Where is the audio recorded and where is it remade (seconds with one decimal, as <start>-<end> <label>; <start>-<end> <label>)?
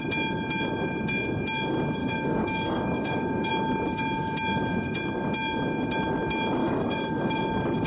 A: 0.0-2.0 recorded; 2.0-3.5 remade; 3.5-6.6 recorded; 6.6-7.4 remade; 7.4-7.9 recorded